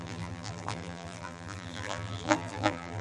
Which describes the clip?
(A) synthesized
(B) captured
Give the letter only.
A